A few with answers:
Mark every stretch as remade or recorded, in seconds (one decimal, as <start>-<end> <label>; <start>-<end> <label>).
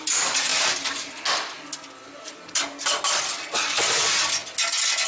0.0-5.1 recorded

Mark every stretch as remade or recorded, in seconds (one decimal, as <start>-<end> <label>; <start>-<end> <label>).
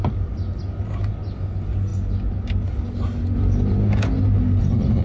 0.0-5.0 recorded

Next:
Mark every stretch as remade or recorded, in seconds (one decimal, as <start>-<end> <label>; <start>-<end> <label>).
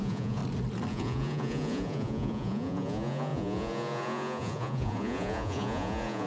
0.0-0.4 remade; 0.4-0.9 recorded; 0.9-6.3 remade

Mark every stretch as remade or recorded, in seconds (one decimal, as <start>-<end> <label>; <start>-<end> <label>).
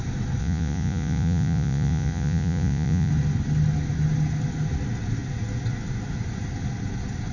0.0-0.4 recorded; 0.4-3.1 remade; 3.1-7.3 recorded